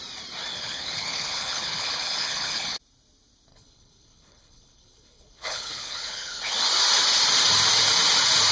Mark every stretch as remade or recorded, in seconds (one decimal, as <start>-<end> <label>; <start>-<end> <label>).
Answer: 0.0-0.5 recorded; 0.5-2.8 remade; 2.8-3.5 recorded; 3.5-6.4 remade; 6.4-8.5 recorded